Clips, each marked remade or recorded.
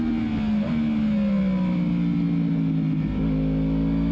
recorded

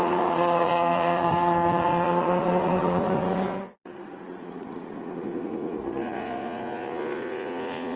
remade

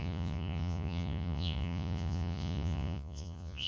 remade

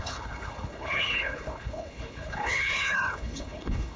remade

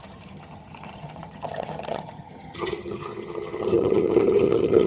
remade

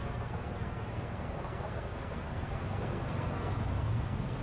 remade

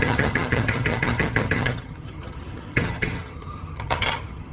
remade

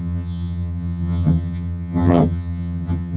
remade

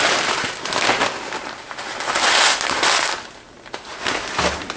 recorded